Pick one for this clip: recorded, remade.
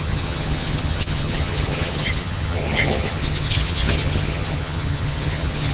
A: remade